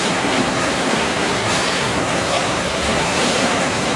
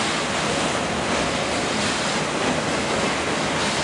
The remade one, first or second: first